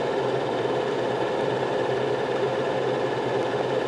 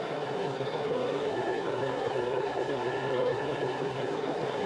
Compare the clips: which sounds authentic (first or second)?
first